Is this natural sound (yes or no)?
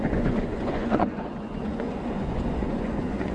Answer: no